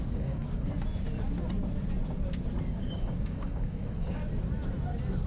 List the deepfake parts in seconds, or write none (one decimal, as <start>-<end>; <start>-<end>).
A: 0.0-0.7; 2.7-4.2